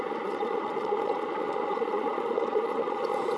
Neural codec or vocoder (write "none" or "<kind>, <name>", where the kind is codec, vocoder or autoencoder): vocoder, Vocos